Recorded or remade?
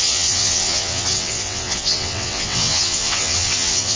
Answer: remade